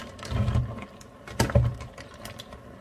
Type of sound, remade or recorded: recorded